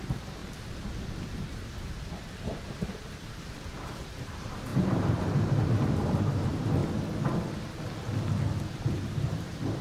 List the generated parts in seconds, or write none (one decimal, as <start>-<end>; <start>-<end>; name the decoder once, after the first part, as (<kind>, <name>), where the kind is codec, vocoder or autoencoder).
0.0-6.8 (vocoder, BigVGAN v2); 8.9-9.8